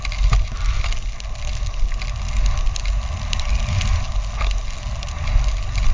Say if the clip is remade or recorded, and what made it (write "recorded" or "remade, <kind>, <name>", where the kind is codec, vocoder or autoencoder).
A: recorded